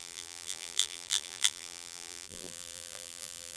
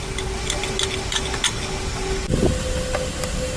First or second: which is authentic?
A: second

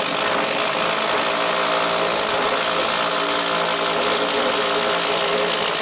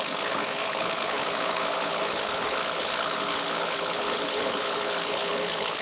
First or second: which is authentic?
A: first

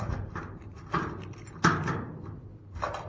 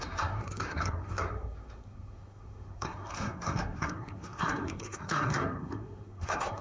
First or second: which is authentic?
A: first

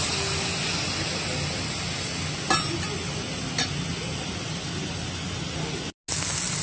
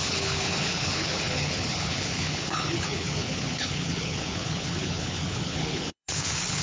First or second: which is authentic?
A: first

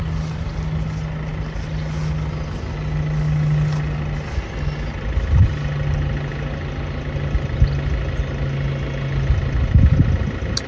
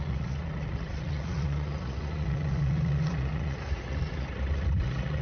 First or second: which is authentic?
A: first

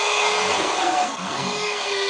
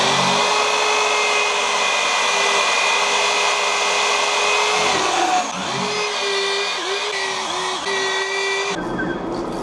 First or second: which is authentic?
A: second